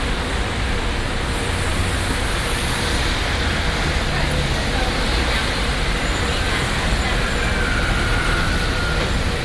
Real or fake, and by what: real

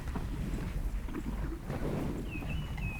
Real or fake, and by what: real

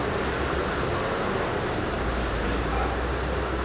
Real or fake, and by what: real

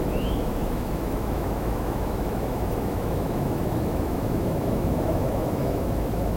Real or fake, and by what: fake, autoencoder, DAC-VAE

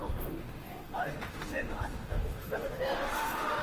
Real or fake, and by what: fake, autoencoder, DAC-VAE